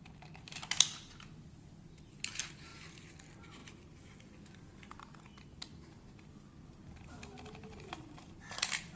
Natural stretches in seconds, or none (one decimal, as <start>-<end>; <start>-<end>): 0.0-9.0